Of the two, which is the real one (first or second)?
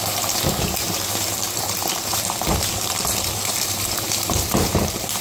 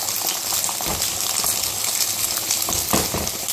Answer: second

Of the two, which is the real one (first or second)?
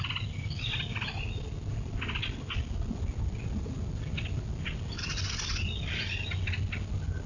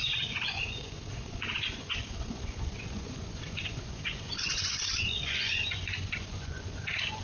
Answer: first